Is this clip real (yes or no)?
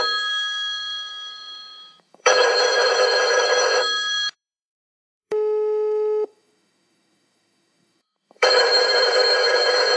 no